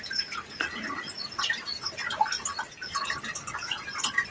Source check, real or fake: real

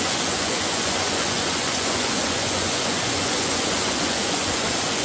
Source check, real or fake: fake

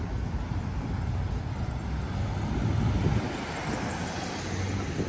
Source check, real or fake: real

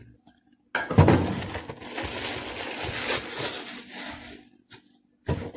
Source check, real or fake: real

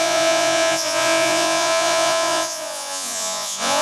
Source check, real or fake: fake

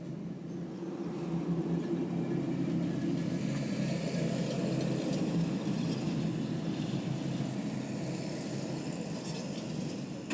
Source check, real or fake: real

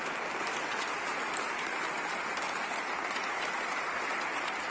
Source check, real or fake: real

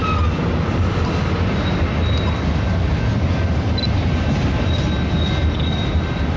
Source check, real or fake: real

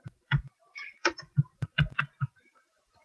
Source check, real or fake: fake